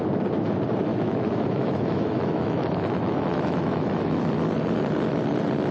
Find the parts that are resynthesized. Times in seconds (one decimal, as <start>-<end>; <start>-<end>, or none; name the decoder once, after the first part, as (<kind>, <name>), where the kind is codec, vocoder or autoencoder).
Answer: 0.9-4.3 (autoencoder, DAC-VAE)